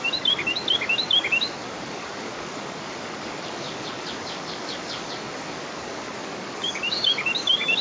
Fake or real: fake